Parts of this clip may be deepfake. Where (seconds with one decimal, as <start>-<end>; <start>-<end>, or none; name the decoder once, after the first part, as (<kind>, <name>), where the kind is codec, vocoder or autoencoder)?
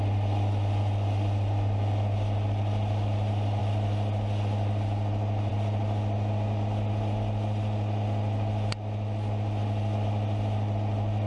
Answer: none